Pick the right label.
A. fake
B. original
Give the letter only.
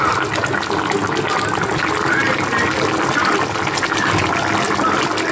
B